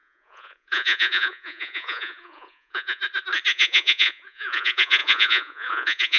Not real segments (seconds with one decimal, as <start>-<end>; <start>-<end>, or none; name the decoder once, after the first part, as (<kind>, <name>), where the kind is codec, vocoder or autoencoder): 0.0-3.0 (vocoder, Vocos); 3.5-6.2

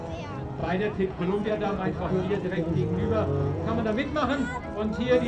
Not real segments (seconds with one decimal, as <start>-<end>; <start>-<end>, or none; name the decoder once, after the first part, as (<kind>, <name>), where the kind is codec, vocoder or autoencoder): 0.6-3.8 (vocoder, Vocos)